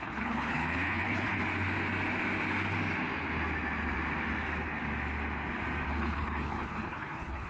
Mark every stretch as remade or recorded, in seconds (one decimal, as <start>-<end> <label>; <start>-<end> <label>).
0.0-1.4 remade; 1.4-5.9 recorded; 5.9-7.5 remade